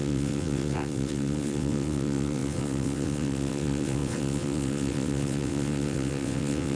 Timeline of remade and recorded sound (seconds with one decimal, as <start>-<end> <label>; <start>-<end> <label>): 0.0-6.7 remade